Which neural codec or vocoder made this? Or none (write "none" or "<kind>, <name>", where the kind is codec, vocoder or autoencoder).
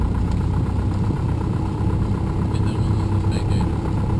vocoder, BigVGAN v2